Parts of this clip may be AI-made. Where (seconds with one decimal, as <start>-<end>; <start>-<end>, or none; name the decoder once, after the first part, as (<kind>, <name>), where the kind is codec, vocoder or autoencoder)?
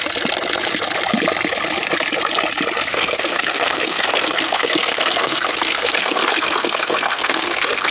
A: 2.9-7.9 (codec, SNAC)